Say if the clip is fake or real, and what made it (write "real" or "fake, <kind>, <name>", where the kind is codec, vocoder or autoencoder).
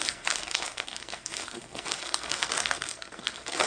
fake, codec, SNAC